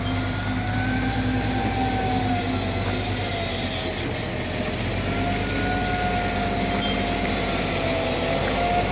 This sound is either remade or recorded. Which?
recorded